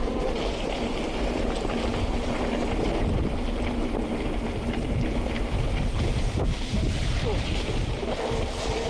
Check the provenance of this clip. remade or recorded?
recorded